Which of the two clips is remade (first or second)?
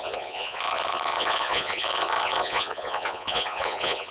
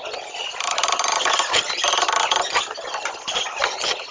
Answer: first